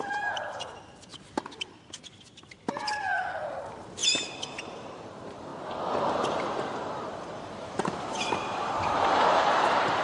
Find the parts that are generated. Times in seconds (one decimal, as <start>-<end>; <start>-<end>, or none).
0.0-1.1; 3.5-4.0; 4.6-5.5; 6.1-10.0

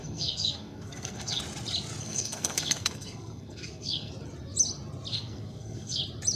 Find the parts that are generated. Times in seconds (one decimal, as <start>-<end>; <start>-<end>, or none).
0.0-1.4; 2.0-4.1; 5.1-6.0

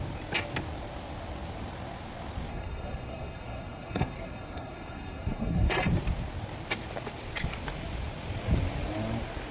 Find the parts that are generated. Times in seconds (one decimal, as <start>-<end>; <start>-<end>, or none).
2.5-5.9

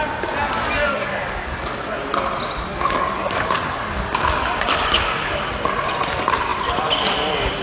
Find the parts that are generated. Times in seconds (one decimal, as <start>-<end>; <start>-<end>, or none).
1.0-1.8; 2.7-5.5